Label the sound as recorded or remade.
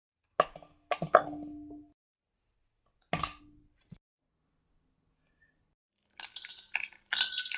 recorded